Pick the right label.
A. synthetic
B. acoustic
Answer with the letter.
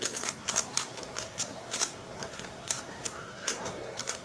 A